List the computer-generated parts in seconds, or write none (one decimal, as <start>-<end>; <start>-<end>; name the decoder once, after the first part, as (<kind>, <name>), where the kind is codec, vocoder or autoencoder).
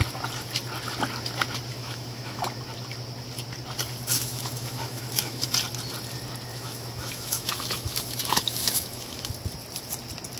1.7-2.4 (autoencoder, DAC-VAE); 4.1-5.5; 6.5-9.3